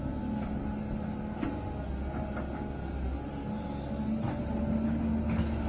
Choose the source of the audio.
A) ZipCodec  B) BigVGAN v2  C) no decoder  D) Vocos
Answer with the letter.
C